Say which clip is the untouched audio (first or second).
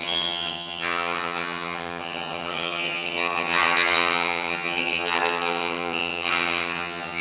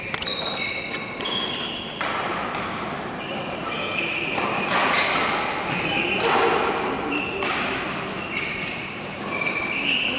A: second